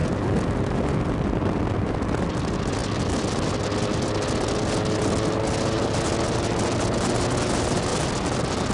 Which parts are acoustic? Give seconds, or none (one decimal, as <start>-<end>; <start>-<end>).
0.0-8.7